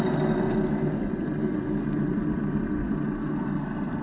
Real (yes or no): yes